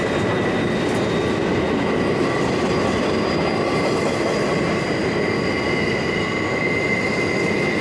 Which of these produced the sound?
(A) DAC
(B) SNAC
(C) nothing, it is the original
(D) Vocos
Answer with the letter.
C